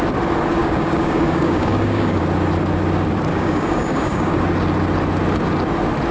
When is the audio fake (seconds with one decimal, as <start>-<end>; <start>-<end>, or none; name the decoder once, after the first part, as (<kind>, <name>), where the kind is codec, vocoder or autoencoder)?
0.6-2.2 (codec, DAC); 3.3-4.4